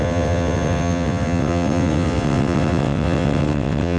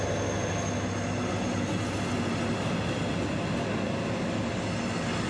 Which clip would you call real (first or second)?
second